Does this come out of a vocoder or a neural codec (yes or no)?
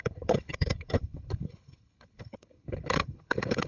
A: yes